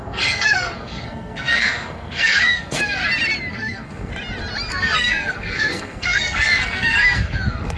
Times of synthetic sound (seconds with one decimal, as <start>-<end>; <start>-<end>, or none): 0.0-3.0; 3.5-4.1; 4.7-7.8